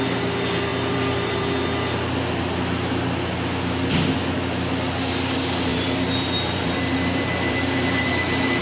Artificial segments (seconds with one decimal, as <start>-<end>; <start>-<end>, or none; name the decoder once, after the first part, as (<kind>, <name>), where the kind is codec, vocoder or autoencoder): 0.7-1.4 (vocoder, BigVGAN v2); 5.7-8.1